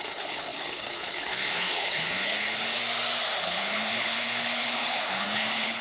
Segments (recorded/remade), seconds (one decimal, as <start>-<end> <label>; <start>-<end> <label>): 0.0-2.8 remade; 2.8-3.4 recorded; 3.4-5.8 remade